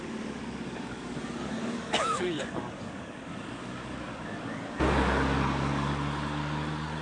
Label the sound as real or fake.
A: fake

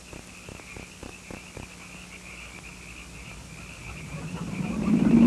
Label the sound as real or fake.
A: real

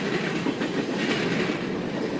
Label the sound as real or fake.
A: real